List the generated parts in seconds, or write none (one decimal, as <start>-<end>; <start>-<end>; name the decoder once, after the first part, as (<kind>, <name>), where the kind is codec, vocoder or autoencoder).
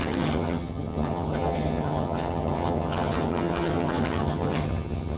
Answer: 0.0-5.2 (vocoder, HiFi-GAN)